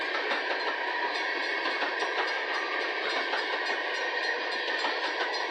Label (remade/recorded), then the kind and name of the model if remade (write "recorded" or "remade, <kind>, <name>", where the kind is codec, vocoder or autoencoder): recorded